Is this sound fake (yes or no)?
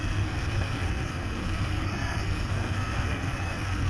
yes